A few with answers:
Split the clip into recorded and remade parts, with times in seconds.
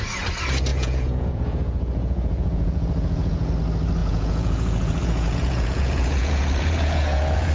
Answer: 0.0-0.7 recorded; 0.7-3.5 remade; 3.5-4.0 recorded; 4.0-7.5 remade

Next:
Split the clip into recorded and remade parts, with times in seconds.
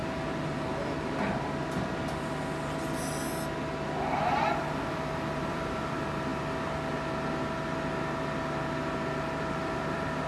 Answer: 0.0-4.6 recorded; 4.6-6.3 remade; 6.3-9.5 recorded; 9.5-10.3 remade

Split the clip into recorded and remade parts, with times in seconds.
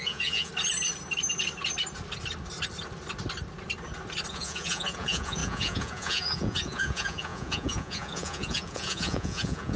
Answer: 0.0-0.5 remade; 0.5-4.3 recorded; 4.3-9.8 remade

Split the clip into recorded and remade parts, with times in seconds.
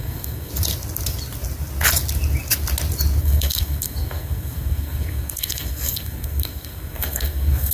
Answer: 0.0-0.5 remade; 0.5-3.2 recorded; 3.2-7.7 remade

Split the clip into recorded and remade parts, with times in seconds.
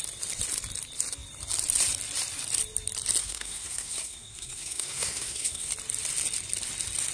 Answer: 0.0-3.2 recorded; 3.2-5.7 remade; 5.7-7.1 recorded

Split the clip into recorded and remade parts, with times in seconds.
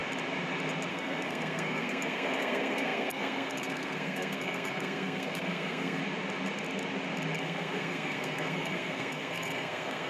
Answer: 0.0-0.9 recorded; 0.9-6.0 remade; 6.0-7.4 recorded; 7.4-10.1 remade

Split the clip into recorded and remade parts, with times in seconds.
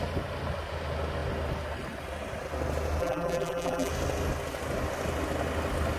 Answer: 0.0-3.0 recorded; 3.0-3.9 remade; 3.9-6.0 recorded